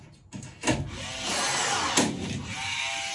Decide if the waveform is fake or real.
real